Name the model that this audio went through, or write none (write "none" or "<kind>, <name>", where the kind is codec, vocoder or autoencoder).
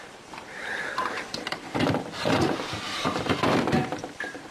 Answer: vocoder, BigVGAN v2